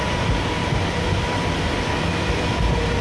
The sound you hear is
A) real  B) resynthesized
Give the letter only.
A